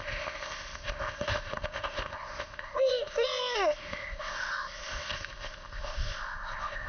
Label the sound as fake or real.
fake